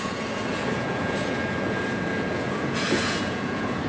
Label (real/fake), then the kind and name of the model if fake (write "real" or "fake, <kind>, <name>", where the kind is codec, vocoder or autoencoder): fake, vocoder, Vocos